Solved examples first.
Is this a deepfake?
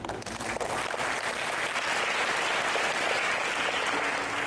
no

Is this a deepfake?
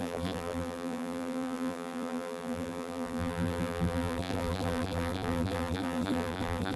yes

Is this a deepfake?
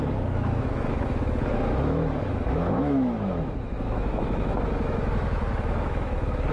yes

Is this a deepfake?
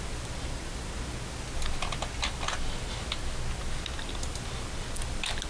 no